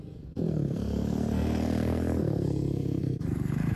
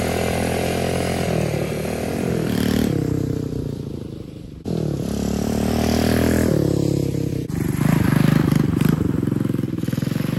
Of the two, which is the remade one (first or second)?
first